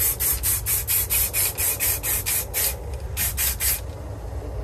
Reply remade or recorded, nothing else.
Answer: recorded